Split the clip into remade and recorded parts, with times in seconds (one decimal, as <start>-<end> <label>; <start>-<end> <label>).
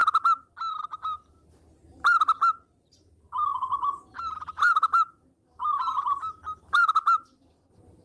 0.0-2.8 recorded; 2.8-8.0 remade